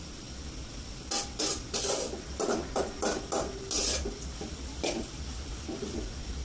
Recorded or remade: recorded